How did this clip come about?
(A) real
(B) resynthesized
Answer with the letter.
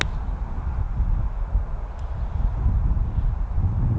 A